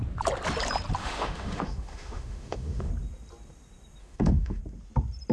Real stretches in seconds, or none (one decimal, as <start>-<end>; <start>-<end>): 0.0-1.0; 2.9-4.0; 4.6-5.3